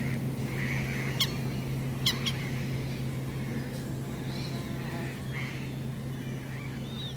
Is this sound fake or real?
real